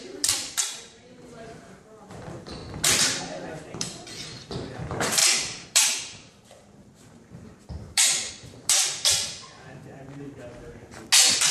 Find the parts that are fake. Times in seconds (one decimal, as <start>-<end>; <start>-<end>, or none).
0.0-2.6; 3.2-9.5